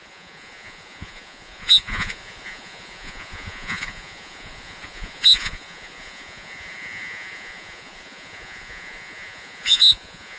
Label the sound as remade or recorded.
remade